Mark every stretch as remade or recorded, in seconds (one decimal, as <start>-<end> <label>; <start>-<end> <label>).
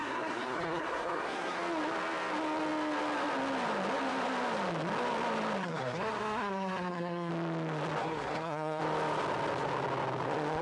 0.0-1.6 remade; 1.6-5.6 recorded; 5.6-7.3 remade; 7.3-8.0 recorded; 8.0-8.8 remade; 8.8-10.6 recorded